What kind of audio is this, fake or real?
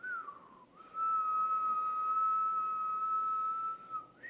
real